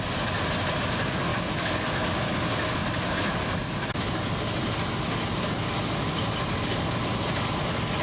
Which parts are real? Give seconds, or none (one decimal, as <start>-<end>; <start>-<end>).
0.0-8.0